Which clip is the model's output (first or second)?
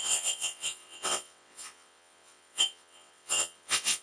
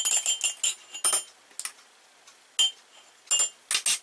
first